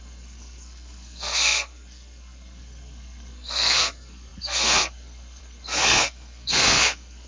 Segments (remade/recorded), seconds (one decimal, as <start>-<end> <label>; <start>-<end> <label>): 0.0-7.3 remade